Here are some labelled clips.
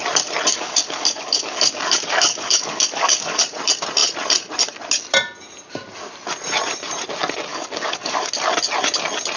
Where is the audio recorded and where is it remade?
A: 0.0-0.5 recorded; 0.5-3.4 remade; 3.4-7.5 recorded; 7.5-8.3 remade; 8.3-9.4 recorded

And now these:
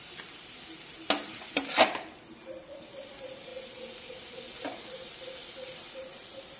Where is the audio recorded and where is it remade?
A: 0.0-6.6 recorded

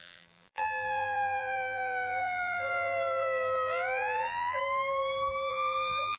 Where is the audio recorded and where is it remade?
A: 0.0-4.6 remade; 4.6-5.5 recorded; 5.5-6.2 remade

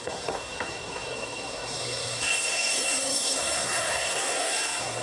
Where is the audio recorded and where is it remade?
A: 0.0-5.0 remade

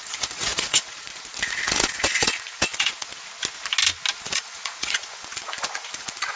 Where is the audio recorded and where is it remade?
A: 0.0-3.1 remade; 3.1-4.2 recorded; 4.2-6.4 remade

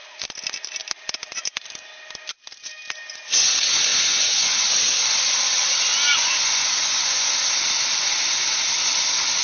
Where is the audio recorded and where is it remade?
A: 0.0-3.9 recorded; 3.9-4.7 remade; 4.7-5.9 recorded; 5.9-7.3 remade; 7.3-9.4 recorded